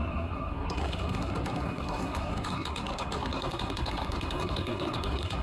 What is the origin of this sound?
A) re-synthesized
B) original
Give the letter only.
A